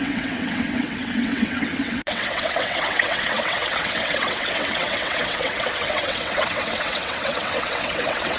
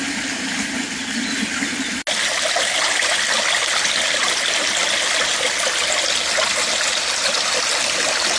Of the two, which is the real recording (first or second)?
second